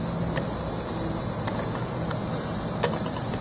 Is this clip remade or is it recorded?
recorded